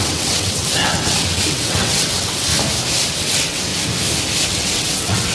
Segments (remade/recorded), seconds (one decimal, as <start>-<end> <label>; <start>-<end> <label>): 0.0-2.5 remade; 2.5-3.2 recorded; 3.2-3.7 remade; 3.7-4.5 recorded; 4.5-5.3 remade

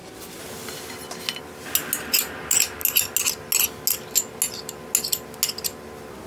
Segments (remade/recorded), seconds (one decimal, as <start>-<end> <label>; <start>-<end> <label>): 0.0-6.3 recorded

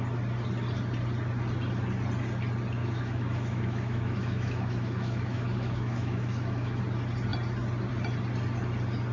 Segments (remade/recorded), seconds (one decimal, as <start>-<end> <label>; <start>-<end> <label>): 0.0-2.8 recorded; 2.8-6.8 remade; 6.8-9.1 recorded

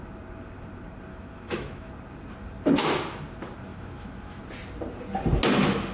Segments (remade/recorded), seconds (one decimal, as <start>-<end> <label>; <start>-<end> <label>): 0.0-1.1 recorded; 1.1-1.9 remade; 1.9-3.7 recorded; 3.7-4.4 remade; 4.4-5.9 recorded

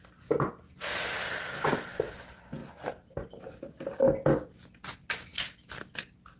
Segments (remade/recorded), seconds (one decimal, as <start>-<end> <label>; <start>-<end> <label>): 0.0-6.4 recorded

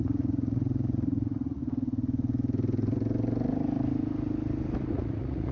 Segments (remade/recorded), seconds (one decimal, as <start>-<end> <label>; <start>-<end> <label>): 0.0-1.6 remade; 1.6-4.9 recorded; 4.9-5.5 remade

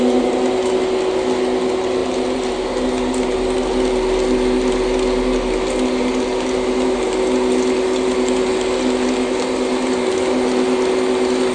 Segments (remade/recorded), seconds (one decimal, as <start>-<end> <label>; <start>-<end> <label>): 0.0-11.5 recorded

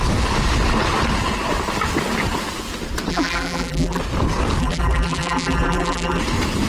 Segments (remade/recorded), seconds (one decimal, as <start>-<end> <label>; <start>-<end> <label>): 0.0-3.1 recorded; 3.1-4.0 remade; 4.0-4.6 recorded; 4.6-6.2 remade; 6.2-6.7 recorded